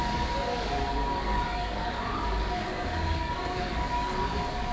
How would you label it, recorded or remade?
remade